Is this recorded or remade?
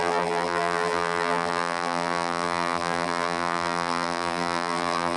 remade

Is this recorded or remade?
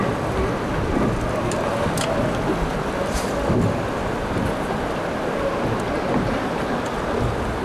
recorded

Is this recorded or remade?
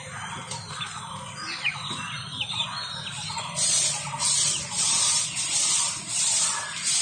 remade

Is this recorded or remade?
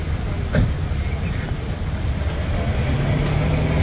recorded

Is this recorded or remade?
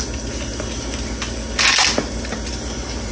recorded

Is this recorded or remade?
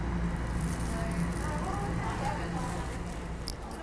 recorded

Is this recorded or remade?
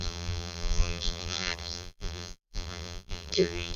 remade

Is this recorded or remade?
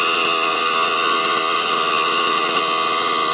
recorded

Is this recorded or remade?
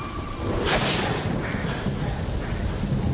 recorded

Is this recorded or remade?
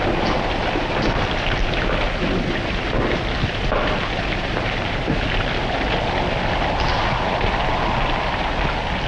remade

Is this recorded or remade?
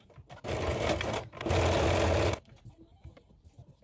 recorded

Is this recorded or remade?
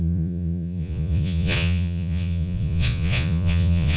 remade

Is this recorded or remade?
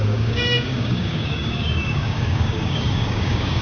remade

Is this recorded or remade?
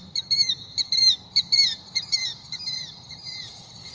remade